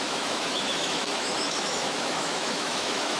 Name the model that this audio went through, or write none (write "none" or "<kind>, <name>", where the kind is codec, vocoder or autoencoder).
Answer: autoencoder, DAC-VAE